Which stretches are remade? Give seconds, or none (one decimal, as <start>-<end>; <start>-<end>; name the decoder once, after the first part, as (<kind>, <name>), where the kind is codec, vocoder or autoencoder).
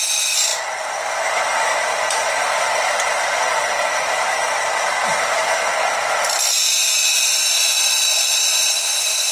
0.5-1.2 (vocoder, BigVGAN v2); 4.9-5.6